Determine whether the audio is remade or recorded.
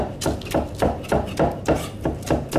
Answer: recorded